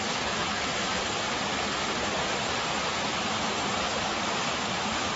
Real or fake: real